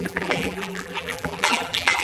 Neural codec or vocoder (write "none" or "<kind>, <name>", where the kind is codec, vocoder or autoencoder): vocoder, BigVGAN v2